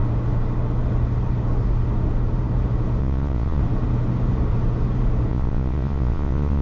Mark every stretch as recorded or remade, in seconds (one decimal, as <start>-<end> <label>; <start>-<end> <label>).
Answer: 0.0-3.0 recorded; 3.0-3.6 remade; 3.6-5.3 recorded; 5.3-6.6 remade